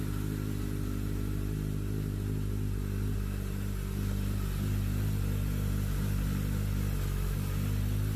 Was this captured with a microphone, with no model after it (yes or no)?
yes